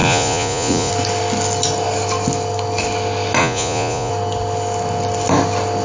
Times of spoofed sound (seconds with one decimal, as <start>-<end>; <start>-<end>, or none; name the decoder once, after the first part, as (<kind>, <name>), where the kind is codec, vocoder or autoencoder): 0.0-0.9 (vocoder, Vocos); 3.4-4.1